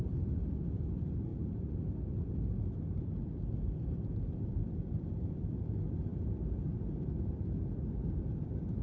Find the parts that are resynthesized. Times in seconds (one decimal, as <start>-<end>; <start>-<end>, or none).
0.0-8.8

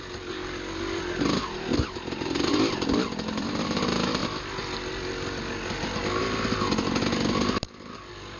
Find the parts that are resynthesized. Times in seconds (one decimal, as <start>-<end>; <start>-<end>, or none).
none

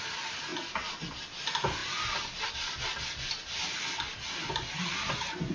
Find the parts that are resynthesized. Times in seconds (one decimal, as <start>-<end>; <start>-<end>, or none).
none

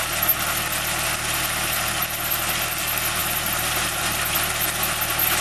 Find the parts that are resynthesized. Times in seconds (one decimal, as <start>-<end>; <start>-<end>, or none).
3.2-4.0

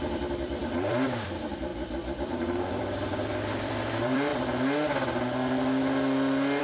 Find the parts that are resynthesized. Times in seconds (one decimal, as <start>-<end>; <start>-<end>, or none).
0.0-4.3

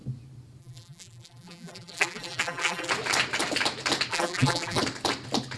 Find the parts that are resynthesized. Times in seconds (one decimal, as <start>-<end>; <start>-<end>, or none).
0.6-2.9; 4.1-4.8

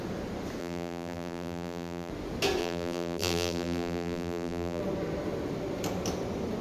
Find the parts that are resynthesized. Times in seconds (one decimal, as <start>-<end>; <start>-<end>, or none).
0.6-2.1; 2.6-4.8